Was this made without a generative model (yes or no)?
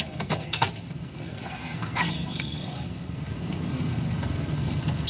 no